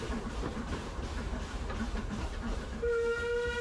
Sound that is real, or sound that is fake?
fake